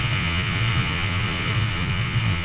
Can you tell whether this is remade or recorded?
remade